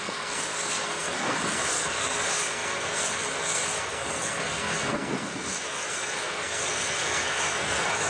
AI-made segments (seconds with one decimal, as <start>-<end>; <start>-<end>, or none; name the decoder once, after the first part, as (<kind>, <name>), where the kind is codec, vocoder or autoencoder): 0.0-8.1 (codec, SNAC)